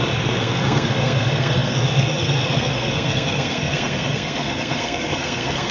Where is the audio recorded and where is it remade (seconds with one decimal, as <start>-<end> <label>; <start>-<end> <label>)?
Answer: 0.0-5.7 remade